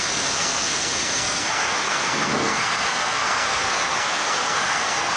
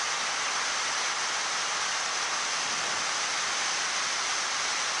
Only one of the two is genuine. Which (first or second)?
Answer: second